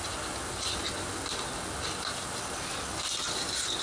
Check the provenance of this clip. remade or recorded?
recorded